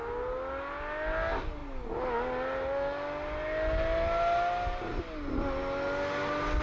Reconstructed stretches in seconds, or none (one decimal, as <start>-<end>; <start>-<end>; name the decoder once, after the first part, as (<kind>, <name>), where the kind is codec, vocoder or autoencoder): none